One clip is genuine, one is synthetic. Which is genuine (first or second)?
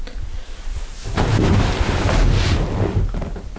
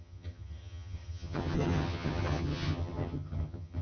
first